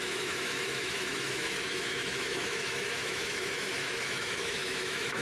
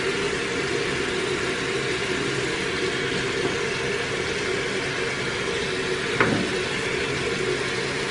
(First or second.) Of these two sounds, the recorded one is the second